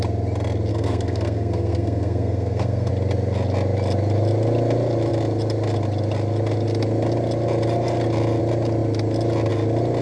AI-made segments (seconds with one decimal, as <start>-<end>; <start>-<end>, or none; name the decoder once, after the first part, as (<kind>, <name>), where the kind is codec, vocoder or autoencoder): 0.7-2.9 (codec, SNAC)